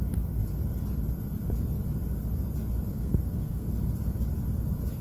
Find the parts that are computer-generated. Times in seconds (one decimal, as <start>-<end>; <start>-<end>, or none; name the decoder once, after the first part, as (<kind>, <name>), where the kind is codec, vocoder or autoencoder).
2.9-3.7 (codec, SNAC)